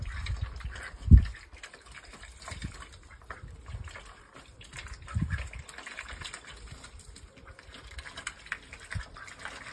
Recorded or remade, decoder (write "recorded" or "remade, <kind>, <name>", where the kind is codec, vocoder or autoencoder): recorded